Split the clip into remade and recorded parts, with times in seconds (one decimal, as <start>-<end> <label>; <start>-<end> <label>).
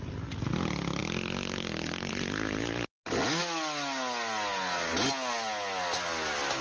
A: 0.0-6.6 recorded